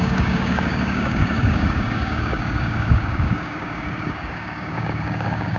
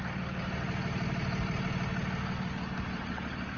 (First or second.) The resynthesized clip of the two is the first